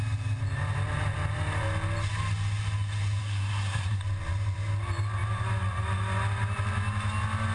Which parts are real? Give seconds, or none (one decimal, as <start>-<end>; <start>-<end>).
0.0-3.2; 4.0-7.5